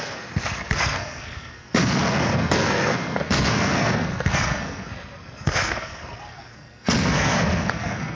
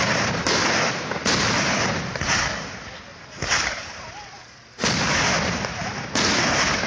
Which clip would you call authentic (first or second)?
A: second